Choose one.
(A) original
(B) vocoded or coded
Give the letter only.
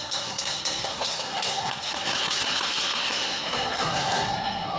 B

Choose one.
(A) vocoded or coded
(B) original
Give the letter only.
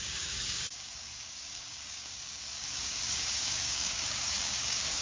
A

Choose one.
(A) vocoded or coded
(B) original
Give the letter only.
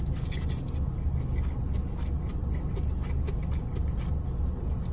B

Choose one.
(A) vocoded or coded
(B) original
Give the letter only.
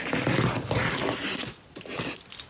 B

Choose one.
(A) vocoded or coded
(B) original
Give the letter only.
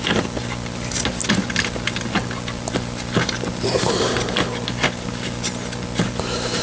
B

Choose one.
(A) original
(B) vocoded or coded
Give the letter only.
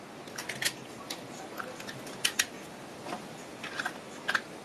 A